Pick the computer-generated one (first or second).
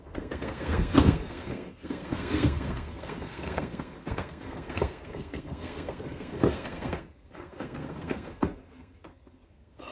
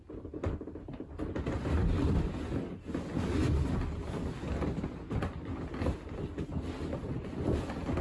first